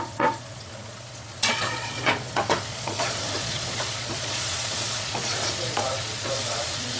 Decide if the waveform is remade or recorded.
remade